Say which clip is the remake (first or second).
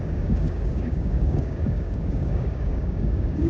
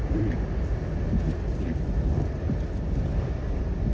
first